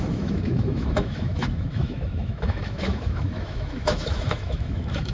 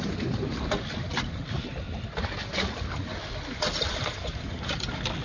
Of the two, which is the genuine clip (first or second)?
second